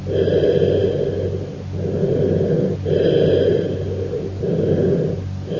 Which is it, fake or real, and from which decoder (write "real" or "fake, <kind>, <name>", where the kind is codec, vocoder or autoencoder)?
real